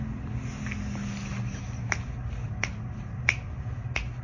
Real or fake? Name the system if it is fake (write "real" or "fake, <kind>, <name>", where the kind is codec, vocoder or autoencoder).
real